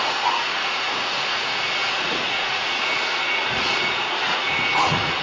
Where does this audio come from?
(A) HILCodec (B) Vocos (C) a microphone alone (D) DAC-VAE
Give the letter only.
B